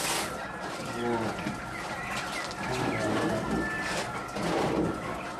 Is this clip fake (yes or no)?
no